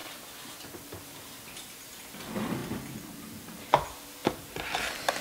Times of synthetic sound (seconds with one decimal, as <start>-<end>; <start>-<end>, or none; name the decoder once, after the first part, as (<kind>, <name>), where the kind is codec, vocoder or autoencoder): 1.9-2.6 (vocoder, BigVGAN v2); 3.7-5.2